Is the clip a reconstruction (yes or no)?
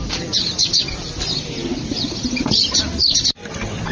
yes